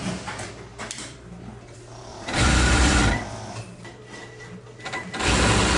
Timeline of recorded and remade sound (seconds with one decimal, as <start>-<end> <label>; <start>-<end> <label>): 0.0-0.7 recorded; 0.7-1.4 remade; 1.4-2.1 recorded; 2.1-3.0 remade; 3.0-5.8 recorded